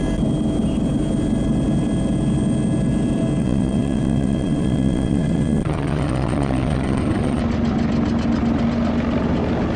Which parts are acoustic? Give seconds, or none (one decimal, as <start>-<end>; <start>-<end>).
0.0-3.4; 7.4-9.8